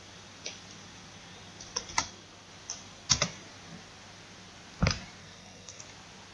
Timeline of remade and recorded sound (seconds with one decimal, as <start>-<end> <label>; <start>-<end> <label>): 0.0-5.2 recorded; 5.2-5.8 remade; 5.8-6.3 recorded